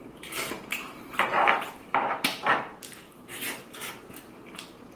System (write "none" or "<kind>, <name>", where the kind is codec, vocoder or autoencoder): vocoder, BigVGAN v2